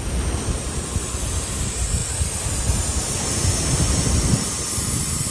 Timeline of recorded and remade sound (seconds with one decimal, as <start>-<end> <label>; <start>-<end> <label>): 0.0-5.3 recorded